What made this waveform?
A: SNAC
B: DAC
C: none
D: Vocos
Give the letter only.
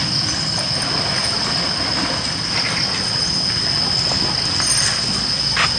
C